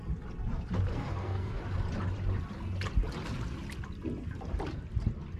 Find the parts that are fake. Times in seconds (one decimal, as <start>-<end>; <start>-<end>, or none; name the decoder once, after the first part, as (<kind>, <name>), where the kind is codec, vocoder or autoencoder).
0.9-1.6 (codec, SNAC)